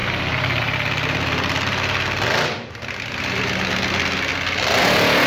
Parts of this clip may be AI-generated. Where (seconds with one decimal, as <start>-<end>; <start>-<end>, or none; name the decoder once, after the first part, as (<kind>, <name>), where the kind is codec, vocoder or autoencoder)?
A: none